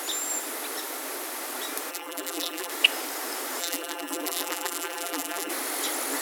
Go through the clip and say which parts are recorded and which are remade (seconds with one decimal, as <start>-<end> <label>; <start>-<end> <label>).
0.0-1.9 recorded; 1.9-2.7 remade; 2.7-3.6 recorded; 3.6-5.5 remade; 5.5-6.2 recorded